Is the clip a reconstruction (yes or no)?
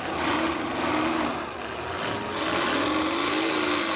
no